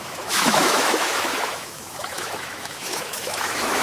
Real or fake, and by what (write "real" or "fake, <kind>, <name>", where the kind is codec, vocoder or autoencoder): fake, autoencoder, DAC-VAE